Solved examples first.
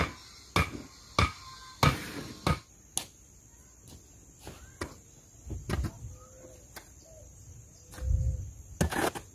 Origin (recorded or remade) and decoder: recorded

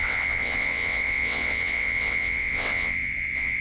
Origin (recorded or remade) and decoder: remade, vocoder, WaveNeXt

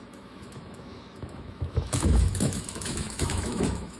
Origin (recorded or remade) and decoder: remade, autoencoder, DAC-VAE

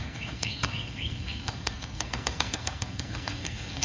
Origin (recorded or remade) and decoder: remade, codec, SNAC